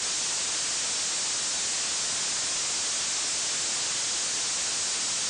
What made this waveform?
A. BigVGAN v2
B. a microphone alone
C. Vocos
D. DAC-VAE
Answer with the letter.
B